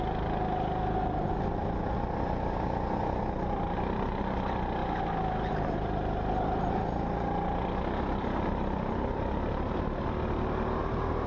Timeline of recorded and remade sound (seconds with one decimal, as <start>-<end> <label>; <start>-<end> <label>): 0.0-11.3 recorded